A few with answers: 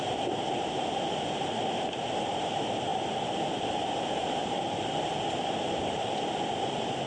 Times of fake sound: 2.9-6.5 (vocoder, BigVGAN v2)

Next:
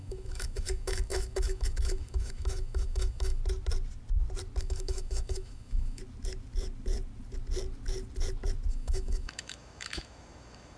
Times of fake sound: 0.0-3.4 (autoencoder, DAC-VAE); 4.6-6.0; 8.7-10.8

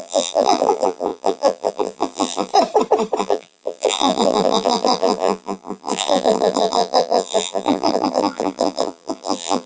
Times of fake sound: 0.0-2.5 (vocoder, BigVGAN v2); 3.2-9.7

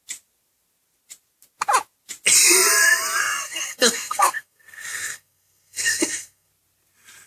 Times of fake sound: 3.2-6.5 (codec, SNAC)

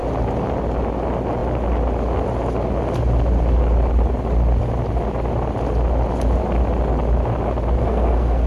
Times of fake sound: 7.8-8.5 (codec, SNAC)

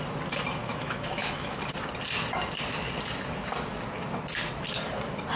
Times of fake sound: 0.6-1.6 (autoencoder, DAC-VAE)